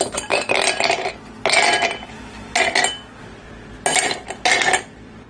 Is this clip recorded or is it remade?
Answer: recorded